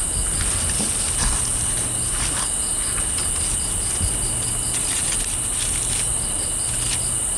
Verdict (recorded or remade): recorded